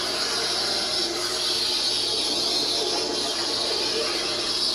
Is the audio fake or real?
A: real